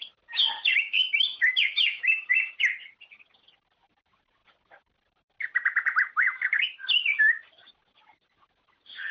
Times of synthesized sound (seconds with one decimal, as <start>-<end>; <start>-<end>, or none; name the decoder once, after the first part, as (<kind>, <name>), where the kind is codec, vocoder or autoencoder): 0.7-2.3 (autoencoder, DAC-VAE)